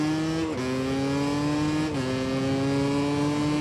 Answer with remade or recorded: recorded